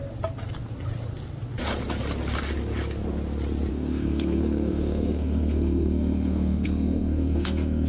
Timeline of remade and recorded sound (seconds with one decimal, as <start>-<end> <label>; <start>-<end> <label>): 0.0-3.7 recorded; 3.7-7.9 remade